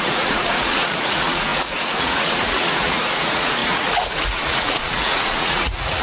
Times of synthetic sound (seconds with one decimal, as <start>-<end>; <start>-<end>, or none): 0.0-6.0